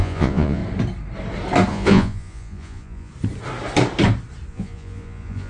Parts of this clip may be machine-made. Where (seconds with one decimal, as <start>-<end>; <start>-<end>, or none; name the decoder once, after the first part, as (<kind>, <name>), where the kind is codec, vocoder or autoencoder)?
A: 0.0-0.6 (vocoder, Vocos); 1.7-3.1; 4.5-5.5